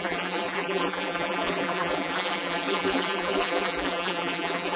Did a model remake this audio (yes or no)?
yes